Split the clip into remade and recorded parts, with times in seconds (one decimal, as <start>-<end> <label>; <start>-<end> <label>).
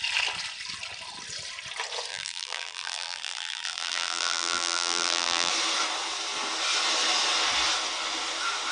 0.0-2.1 recorded; 2.1-5.5 remade; 5.5-8.7 recorded